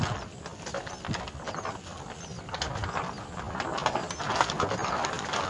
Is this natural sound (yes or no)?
yes